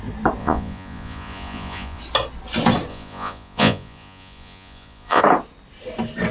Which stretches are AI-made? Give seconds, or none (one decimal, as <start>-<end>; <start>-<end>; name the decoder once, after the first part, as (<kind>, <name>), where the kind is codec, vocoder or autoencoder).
0.4-2.0 (vocoder, Vocos); 2.9-5.2

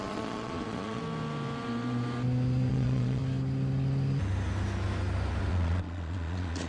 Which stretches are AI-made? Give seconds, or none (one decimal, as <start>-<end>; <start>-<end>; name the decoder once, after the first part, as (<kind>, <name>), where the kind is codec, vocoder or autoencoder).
0.0-1.0 (vocoder, Vocos); 2.7-3.2; 5.5-6.7

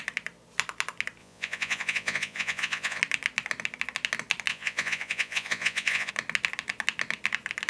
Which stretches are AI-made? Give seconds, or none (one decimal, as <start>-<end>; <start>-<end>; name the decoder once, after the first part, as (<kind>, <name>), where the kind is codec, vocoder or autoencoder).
1.2-3.0 (vocoder, Vocos); 4.5-6.1

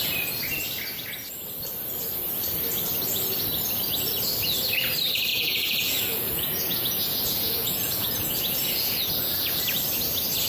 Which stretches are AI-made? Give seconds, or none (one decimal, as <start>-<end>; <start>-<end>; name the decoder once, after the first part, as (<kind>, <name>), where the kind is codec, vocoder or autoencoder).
5.3-9.6 (vocoder, Vocos)

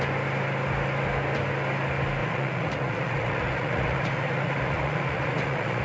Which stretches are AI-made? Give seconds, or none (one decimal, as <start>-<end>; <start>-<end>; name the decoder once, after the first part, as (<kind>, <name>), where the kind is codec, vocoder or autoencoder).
2.2-5.8 (vocoder, Vocos)

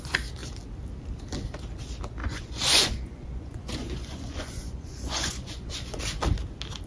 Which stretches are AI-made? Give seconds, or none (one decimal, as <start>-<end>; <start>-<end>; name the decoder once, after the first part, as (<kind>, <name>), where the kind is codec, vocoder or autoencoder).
2.2-6.0 (vocoder, Vocos)